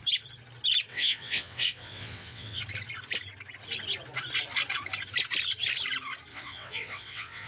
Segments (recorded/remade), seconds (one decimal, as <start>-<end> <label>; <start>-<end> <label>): 0.0-0.9 recorded; 0.9-2.6 remade; 2.6-6.3 recorded; 6.3-7.5 remade